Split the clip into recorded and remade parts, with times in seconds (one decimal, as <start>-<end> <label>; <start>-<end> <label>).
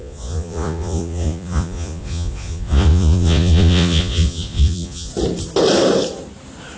0.0-5.1 remade; 5.1-6.8 recorded